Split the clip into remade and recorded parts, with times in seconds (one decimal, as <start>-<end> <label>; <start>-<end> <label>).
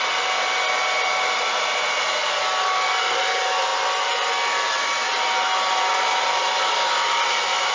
0.0-7.7 recorded